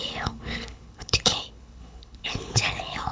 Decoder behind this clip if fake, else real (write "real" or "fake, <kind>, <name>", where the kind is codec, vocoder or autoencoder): fake, codec, HILCodec